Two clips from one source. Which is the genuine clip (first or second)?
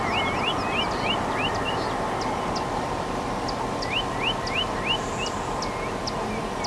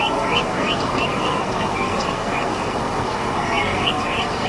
first